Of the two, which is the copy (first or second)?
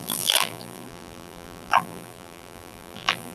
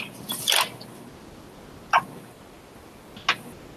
first